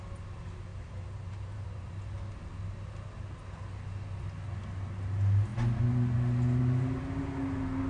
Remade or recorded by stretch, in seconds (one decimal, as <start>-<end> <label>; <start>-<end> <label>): 0.0-0.7 recorded; 0.7-1.9 remade; 1.9-7.9 recorded